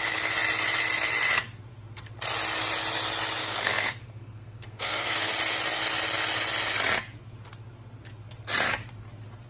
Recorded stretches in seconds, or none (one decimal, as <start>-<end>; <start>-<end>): 0.0-3.4; 5.3-9.5